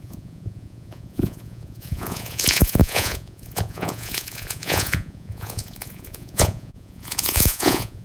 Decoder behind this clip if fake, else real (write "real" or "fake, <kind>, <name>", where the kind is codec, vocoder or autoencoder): fake, vocoder, Vocos